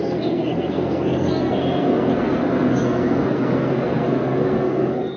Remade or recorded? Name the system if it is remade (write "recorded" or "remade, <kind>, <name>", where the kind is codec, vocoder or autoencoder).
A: remade, codec, SNAC